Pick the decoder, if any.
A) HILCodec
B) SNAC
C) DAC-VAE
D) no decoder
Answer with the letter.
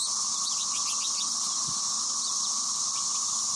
D